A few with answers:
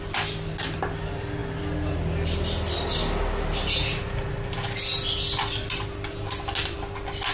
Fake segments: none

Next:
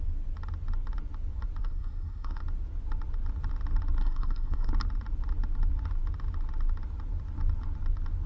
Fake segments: 1.6-2.4; 4.0-4.7

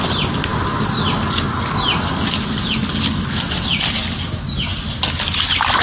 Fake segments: none

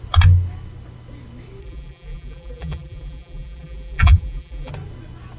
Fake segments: 1.6-4.7

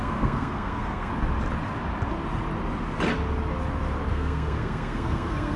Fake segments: 0.0-1.1; 4.1-5.6

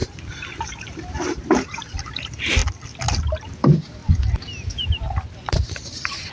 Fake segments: 0.0-2.6; 3.4-4.0; 5.7-6.3

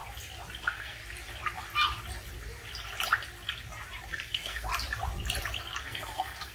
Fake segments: 0.6-1.0; 4.1-4.7; 5.8-6.5

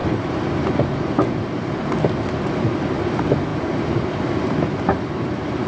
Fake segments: none